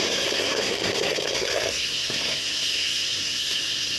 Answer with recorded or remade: remade